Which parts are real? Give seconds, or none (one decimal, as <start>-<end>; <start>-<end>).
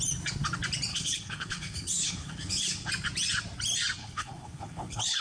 0.0-0.9; 2.9-4.0